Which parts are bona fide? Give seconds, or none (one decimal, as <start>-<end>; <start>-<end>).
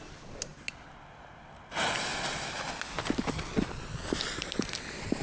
0.0-5.2